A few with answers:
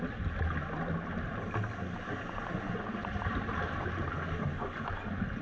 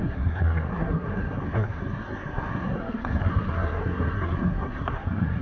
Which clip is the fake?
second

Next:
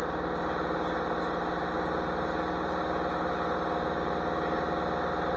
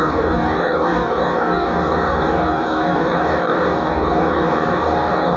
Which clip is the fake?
second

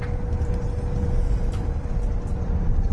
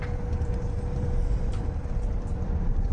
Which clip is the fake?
second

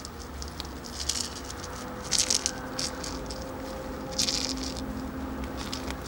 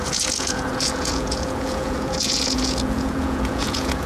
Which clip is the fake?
second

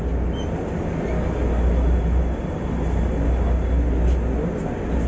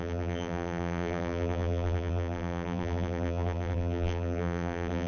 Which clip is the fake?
second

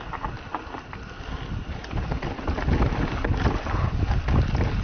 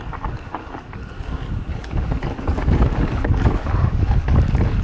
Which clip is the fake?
second